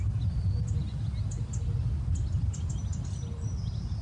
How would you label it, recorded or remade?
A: recorded